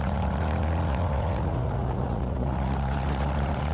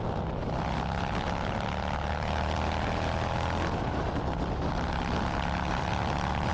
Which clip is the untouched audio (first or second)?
second